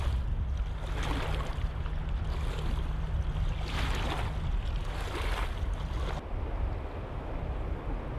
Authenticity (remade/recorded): recorded